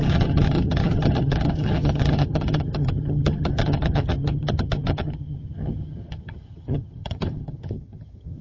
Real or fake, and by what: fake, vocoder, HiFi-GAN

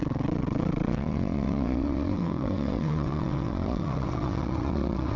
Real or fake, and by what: fake, vocoder, WaveNeXt